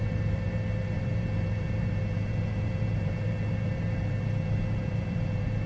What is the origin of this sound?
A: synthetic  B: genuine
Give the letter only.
A